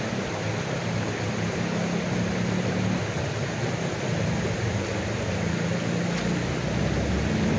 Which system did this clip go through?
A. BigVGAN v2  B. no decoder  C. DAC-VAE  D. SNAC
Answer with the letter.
B